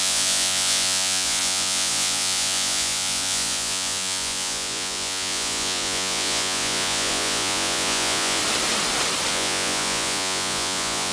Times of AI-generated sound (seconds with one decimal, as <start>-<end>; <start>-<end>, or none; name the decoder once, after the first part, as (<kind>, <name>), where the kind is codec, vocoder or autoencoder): 0.0-8.4 (vocoder, Vocos); 9.3-11.1